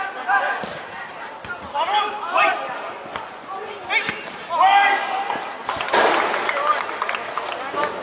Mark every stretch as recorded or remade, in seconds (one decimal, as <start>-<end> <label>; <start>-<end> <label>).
0.0-3.1 recorded; 3.1-3.9 remade; 3.9-8.0 recorded